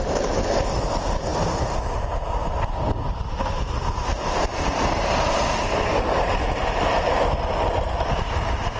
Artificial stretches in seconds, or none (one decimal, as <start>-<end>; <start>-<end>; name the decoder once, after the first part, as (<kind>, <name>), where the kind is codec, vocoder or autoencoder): none

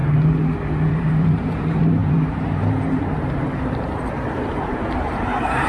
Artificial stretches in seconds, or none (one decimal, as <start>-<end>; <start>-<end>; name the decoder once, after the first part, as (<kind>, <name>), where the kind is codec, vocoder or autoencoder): 0.9-5.7 (vocoder, BigVGAN v2)

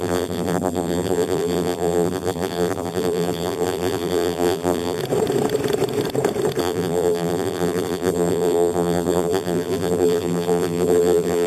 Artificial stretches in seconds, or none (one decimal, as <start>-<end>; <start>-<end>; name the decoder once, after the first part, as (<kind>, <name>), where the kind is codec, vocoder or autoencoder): 0.0-5.0 (vocoder, BigVGAN v2); 6.6-11.5

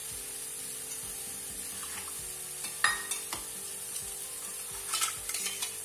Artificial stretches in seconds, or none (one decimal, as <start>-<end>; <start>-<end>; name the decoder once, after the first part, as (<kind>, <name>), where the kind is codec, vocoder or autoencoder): none

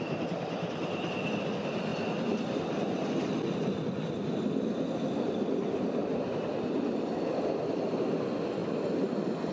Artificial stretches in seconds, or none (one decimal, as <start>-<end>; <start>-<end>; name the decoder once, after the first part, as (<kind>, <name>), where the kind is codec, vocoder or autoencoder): none

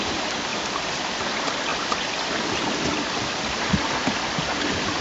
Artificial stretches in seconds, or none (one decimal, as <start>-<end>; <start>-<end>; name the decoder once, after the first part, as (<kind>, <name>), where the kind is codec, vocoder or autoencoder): 0.5-1.1 (vocoder, BigVGAN v2); 1.7-4.0